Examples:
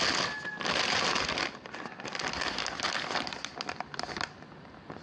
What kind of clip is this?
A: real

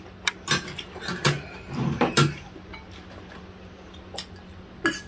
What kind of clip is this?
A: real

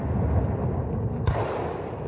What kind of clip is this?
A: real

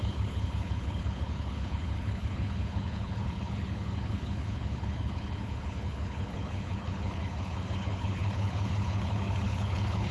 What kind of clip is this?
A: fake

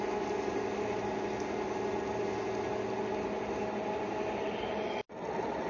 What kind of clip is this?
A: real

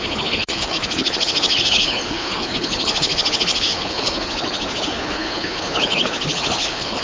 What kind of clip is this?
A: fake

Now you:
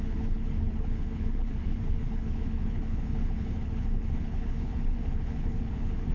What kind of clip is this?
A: fake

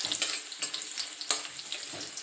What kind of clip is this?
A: real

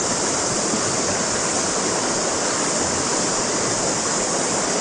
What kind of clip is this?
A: real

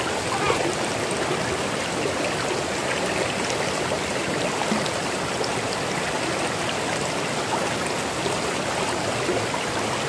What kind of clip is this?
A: real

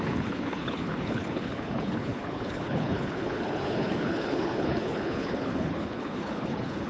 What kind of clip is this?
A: fake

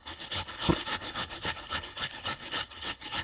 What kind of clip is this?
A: fake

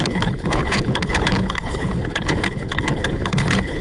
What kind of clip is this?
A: fake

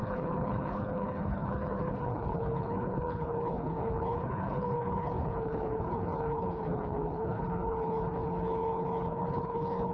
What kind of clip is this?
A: fake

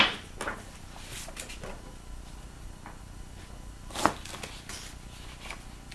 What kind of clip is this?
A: real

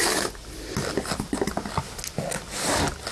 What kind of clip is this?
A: real